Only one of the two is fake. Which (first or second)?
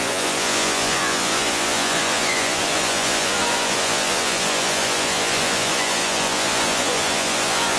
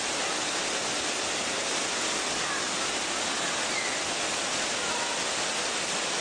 first